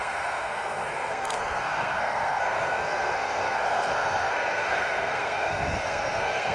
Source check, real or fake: fake